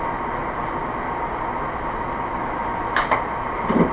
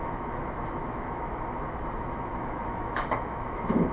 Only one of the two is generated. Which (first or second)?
second